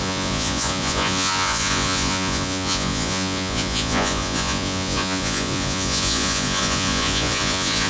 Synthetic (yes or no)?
yes